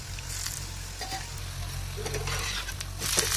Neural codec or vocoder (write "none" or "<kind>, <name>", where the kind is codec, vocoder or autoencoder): none